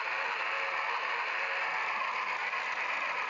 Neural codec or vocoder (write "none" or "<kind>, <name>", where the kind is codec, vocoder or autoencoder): none